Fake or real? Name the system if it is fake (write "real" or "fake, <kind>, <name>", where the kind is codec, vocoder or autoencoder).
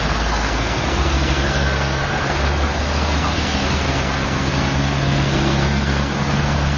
fake, codec, SNAC